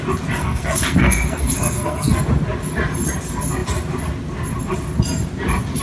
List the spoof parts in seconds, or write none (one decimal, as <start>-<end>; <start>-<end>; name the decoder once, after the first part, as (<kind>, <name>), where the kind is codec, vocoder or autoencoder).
0.4-2.2 (codec, SNAC)